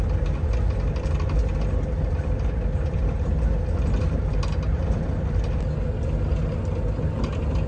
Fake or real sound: real